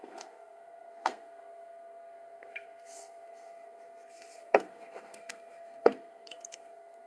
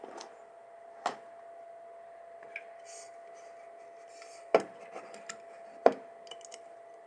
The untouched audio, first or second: second